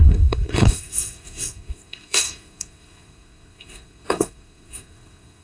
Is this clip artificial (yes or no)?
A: yes